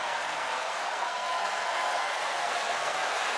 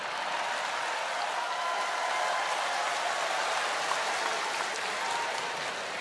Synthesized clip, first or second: first